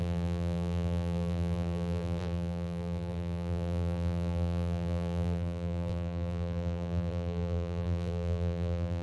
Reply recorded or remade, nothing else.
remade